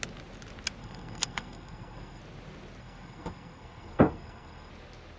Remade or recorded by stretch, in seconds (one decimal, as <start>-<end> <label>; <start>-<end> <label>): 0.0-0.8 recorded; 0.8-2.2 remade; 2.2-2.8 recorded; 2.8-4.7 remade; 4.7-5.2 recorded